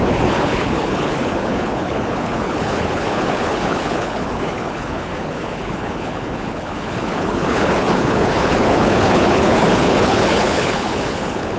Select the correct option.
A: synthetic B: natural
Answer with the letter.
A